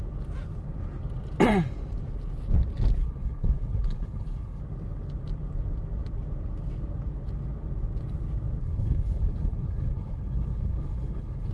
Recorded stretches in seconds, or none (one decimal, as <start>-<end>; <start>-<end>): 0.0-3.0; 4.6-8.6